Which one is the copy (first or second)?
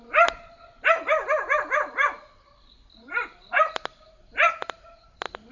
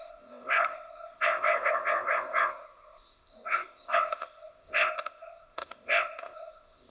second